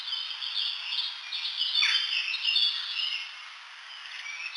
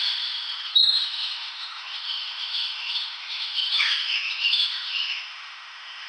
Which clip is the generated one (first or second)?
second